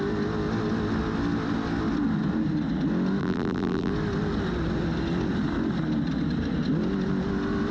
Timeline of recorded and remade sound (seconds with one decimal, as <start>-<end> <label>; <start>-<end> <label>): 0.0-3.2 recorded; 3.2-3.9 remade; 3.9-7.7 recorded